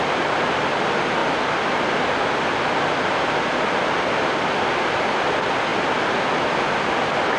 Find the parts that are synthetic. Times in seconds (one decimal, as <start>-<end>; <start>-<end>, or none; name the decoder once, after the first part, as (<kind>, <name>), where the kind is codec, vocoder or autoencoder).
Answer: none